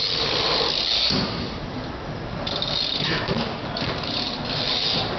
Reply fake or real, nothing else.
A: real